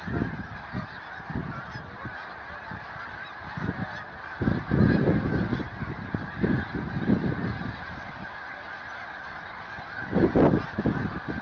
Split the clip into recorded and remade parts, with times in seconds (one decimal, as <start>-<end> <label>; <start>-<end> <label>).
0.0-11.4 recorded